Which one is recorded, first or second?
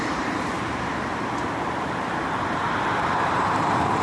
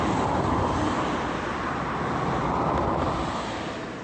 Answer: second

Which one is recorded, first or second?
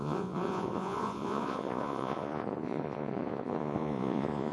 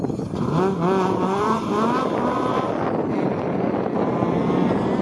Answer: second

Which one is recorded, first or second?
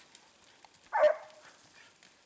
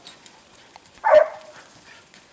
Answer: first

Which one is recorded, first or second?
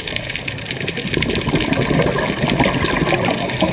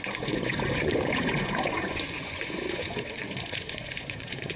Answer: first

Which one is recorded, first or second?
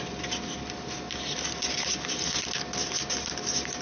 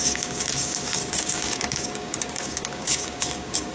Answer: first